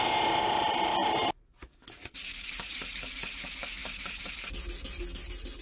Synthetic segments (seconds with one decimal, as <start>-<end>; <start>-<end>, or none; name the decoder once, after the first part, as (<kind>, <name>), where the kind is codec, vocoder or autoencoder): none